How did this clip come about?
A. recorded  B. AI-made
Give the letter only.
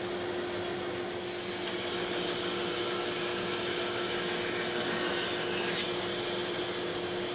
A